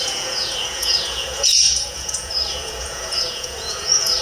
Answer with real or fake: fake